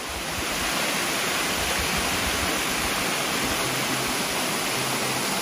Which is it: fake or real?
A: real